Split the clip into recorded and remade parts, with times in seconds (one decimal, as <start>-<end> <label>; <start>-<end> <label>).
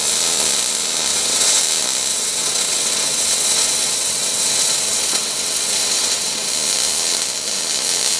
0.0-1.1 recorded; 1.1-1.6 remade; 1.6-2.1 recorded; 2.1-6.5 remade; 6.5-8.2 recorded